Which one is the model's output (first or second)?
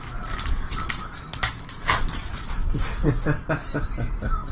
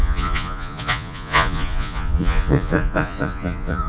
second